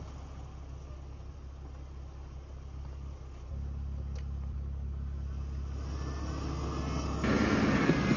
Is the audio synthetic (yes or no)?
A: no